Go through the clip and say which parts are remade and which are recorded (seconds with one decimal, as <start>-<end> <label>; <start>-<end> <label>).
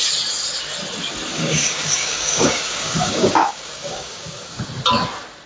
0.0-1.3 recorded; 1.3-4.6 remade; 4.6-5.5 recorded